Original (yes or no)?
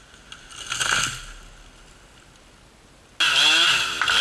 yes